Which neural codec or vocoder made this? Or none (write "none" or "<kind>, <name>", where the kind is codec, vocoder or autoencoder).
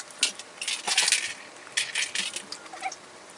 none